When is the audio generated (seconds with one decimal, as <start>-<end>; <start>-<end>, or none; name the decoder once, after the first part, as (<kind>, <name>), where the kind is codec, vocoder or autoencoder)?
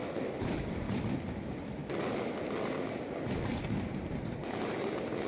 0.0-0.5 (autoencoder, DAC-VAE)